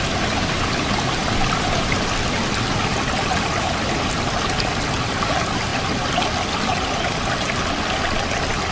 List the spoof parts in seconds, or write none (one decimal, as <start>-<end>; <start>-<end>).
none